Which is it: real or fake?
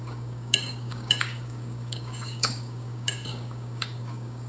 fake